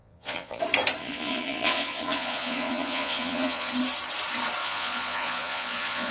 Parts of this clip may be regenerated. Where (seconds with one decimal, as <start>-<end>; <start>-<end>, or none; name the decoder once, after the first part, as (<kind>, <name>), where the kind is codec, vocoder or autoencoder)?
0.0-0.6 (vocoder, Vocos); 1.0-3.7; 4.6-6.1